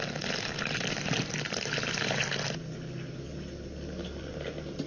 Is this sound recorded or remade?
recorded